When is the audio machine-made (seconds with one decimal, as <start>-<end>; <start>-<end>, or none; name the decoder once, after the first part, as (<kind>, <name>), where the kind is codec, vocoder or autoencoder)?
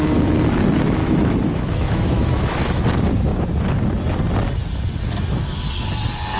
1.0-2.8 (autoencoder, DAC-VAE)